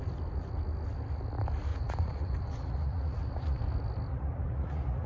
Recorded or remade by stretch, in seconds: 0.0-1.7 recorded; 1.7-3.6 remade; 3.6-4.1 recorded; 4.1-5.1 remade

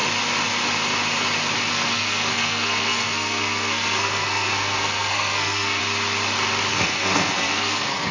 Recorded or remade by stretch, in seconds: 0.0-1.7 recorded; 1.7-5.8 remade; 5.8-6.7 recorded; 6.7-8.1 remade

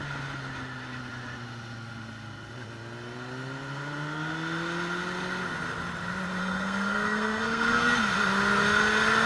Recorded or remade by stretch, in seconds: 0.0-6.4 recorded; 6.4-8.0 remade; 8.0-9.3 recorded

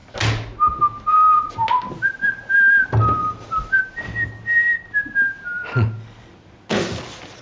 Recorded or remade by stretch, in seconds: 0.0-3.2 recorded; 3.2-3.8 remade; 3.8-7.4 recorded

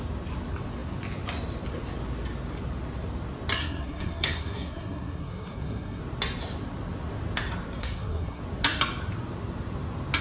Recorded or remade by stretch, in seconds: 0.0-3.6 recorded; 3.6-6.0 remade; 6.0-7.8 recorded; 7.8-8.4 remade; 8.4-10.2 recorded